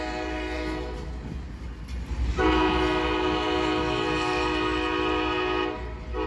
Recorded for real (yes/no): yes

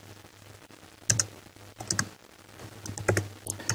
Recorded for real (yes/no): yes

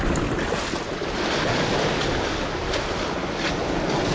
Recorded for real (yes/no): yes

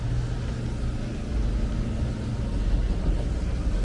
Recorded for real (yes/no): yes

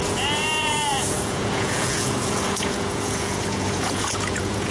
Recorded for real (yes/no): no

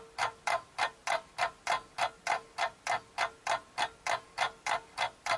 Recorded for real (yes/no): yes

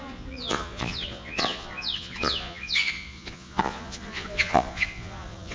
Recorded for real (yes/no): no